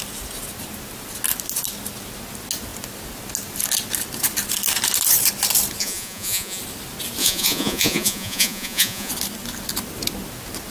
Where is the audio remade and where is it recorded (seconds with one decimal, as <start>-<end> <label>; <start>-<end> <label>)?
0.0-5.8 recorded; 5.8-6.6 remade; 6.6-7.2 recorded; 7.2-9.1 remade; 9.1-10.7 recorded